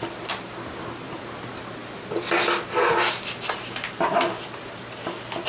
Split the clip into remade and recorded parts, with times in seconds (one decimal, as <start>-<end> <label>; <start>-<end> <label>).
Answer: 0.0-5.5 recorded